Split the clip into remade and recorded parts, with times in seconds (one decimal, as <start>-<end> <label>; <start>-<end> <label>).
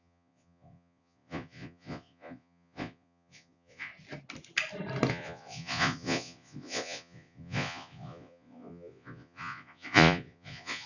0.0-3.9 remade; 3.9-5.1 recorded; 5.1-10.9 remade